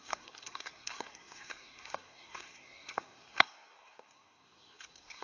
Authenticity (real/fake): fake